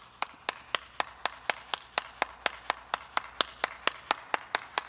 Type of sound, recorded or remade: recorded